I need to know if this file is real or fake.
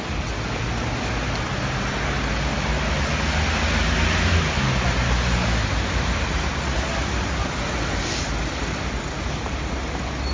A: real